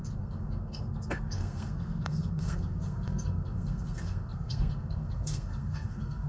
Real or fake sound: fake